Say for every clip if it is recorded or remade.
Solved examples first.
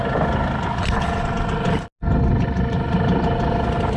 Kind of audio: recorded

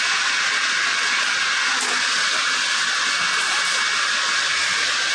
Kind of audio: recorded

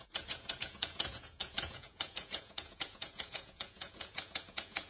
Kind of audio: remade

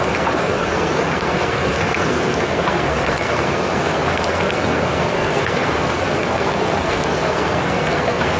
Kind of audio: remade